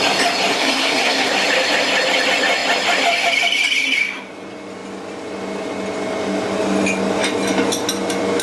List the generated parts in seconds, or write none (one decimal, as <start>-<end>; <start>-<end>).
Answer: 0.5-1.3